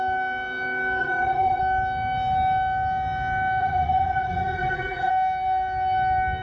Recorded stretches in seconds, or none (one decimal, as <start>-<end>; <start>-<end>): 0.0-1.0; 1.6-3.6; 5.1-6.4